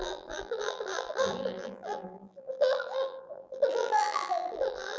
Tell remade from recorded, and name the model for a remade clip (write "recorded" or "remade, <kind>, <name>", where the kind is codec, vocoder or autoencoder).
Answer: remade, vocoder, BigVGAN v2